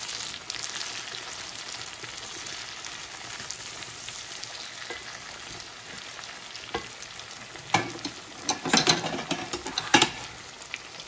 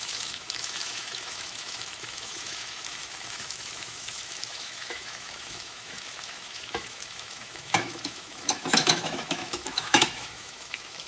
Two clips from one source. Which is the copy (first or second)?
second